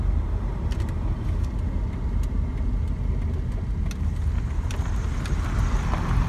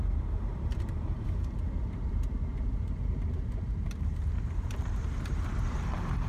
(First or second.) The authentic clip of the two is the first